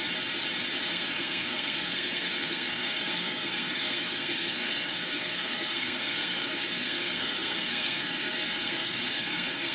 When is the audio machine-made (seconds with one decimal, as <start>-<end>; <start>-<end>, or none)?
0.8-9.7